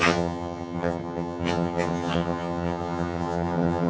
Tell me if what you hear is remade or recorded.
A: remade